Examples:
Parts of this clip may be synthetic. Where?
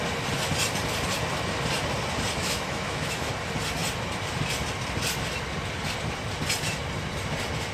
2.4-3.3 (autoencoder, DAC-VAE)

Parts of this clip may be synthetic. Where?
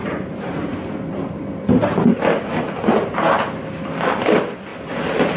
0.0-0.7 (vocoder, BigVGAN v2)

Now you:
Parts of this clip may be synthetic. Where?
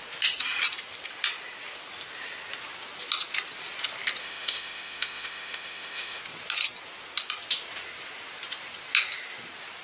4.2-6.2 (autoencoder, DAC-VAE)